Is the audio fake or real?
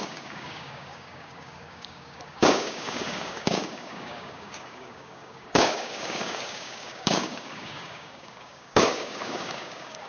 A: fake